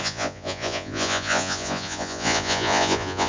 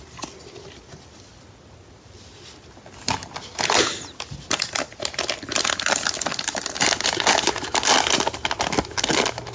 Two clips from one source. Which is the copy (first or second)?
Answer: first